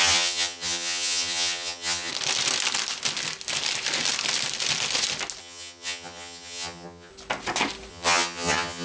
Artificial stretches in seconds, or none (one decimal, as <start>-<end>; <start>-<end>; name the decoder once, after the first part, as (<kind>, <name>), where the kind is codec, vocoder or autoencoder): 0.0-2.1 (vocoder, HiFi-GAN); 5.4-7.1; 7.9-8.8